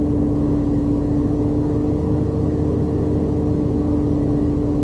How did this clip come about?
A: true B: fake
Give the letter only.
A